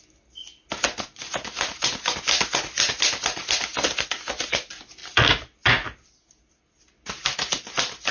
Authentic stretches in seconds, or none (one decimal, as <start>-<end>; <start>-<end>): 0.0-8.1